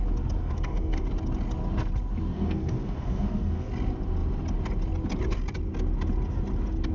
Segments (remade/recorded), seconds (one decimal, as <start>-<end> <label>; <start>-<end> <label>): 0.0-0.4 recorded; 0.4-1.0 remade; 1.0-2.3 recorded; 2.3-3.7 remade; 3.7-6.9 recorded